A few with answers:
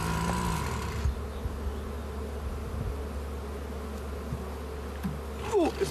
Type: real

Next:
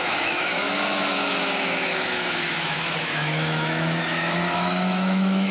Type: fake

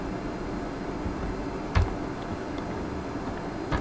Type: real